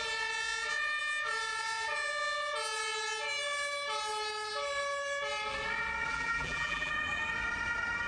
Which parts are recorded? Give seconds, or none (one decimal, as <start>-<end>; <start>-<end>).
0.0-6.1; 6.9-8.1